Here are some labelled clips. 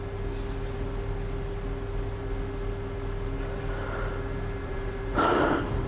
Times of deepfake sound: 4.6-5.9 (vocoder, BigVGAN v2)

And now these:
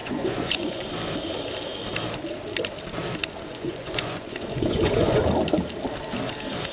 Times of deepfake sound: 0.0-0.9 (vocoder, Vocos); 3.5-5.2

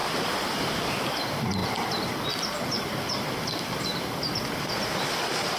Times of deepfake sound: none

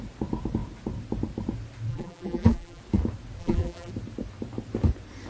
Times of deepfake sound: 1.9-2.8 (vocoder, BigVGAN v2); 3.4-3.9

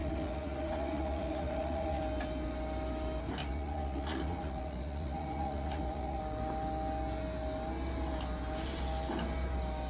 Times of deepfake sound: 0.0-2.0 (vocoder, Vocos); 3.4-6.2

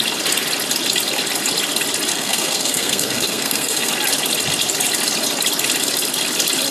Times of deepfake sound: 2.1-3.9 (codec, SNAC)

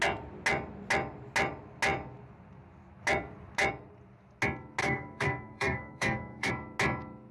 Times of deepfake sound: 4.8-6.5 (codec, SNAC)